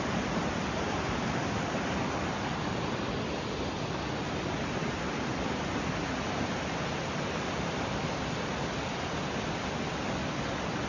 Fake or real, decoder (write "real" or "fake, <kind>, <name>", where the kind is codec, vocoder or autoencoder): real